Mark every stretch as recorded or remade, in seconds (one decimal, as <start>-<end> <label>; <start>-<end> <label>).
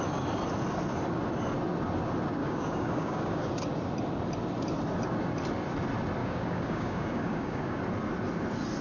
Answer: 0.0-2.4 recorded; 2.4-3.5 remade; 3.5-6.2 recorded; 6.2-7.8 remade; 7.8-8.8 recorded